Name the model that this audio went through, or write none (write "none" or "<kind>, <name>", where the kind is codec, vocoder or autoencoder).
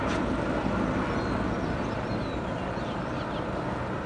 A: none